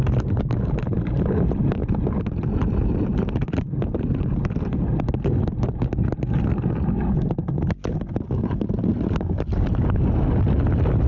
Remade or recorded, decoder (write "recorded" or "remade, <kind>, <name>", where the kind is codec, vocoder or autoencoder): recorded